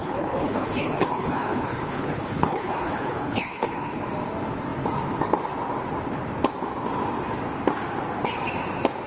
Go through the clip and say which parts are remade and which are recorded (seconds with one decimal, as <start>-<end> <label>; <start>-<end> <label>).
0.0-4.0 remade; 4.0-9.1 recorded